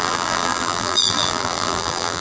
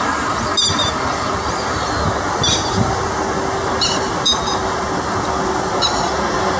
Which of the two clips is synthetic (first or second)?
first